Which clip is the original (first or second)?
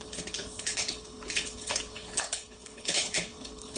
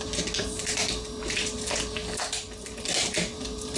second